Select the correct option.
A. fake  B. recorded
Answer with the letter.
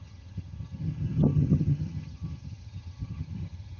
A